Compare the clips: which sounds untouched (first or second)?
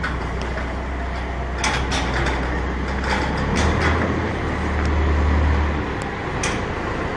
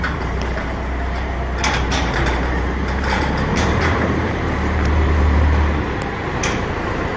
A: first